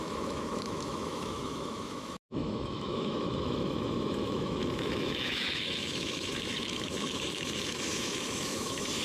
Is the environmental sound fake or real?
fake